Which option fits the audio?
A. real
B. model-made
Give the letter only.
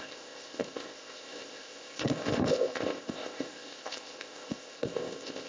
B